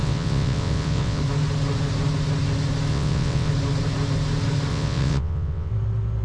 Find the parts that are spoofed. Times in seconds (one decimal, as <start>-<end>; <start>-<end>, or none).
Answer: 0.0-1.2; 2.9-3.5; 4.7-5.7